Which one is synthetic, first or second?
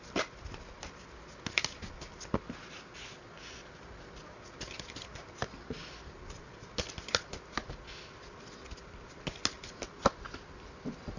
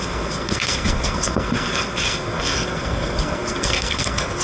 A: second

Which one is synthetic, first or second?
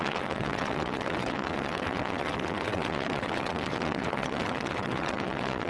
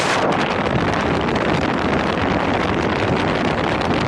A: first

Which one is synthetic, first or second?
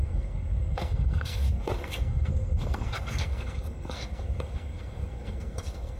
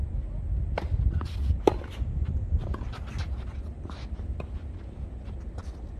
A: first